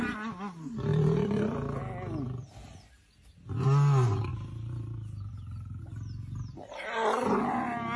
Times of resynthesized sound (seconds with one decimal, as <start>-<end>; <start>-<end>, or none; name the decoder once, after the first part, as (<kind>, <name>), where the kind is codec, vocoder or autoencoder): 0.9-1.8 (vocoder, BigVGAN v2); 4.3-5.8